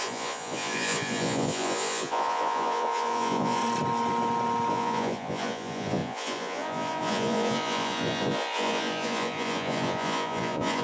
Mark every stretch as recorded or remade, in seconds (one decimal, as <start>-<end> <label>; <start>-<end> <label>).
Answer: 0.0-3.6 remade; 3.6-4.7 recorded; 4.7-10.8 remade